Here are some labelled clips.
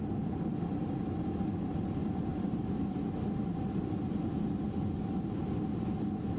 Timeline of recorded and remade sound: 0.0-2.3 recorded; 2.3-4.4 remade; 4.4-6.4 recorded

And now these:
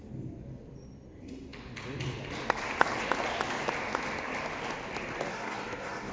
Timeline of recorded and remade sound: 0.0-5.3 recorded; 5.3-6.1 remade